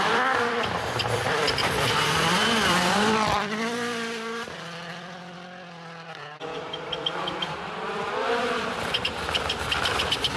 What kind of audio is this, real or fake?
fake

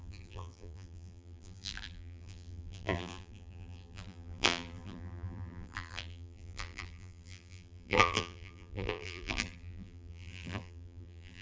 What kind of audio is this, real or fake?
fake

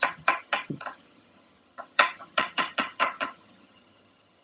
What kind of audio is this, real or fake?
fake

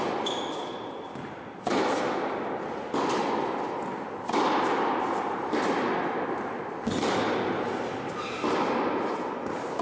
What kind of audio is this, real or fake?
real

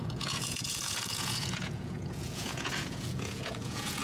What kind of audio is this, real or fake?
fake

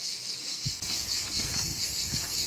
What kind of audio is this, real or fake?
fake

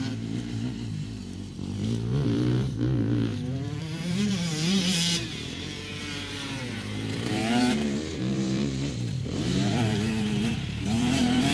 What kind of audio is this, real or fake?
fake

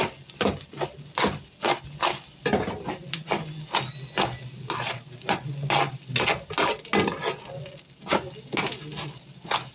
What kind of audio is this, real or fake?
real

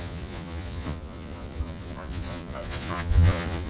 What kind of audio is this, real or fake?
fake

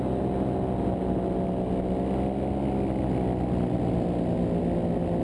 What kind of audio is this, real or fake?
real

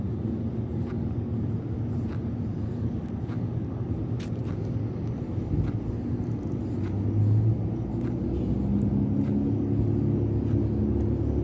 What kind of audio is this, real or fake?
real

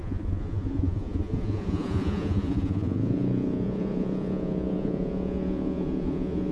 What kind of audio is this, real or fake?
fake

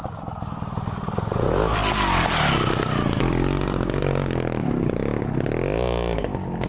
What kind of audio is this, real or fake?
real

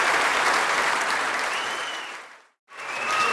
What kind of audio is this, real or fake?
fake